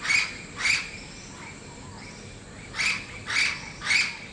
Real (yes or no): yes